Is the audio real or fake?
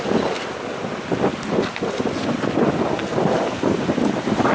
real